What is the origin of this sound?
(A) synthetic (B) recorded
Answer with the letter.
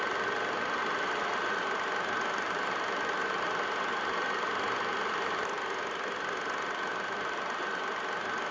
B